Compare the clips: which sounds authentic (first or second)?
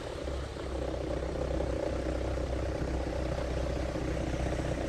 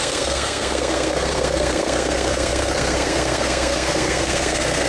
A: first